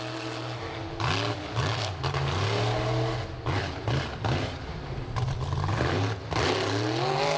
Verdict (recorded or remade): recorded